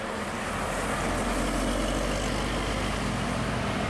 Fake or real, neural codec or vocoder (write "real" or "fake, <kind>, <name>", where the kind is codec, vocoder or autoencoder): real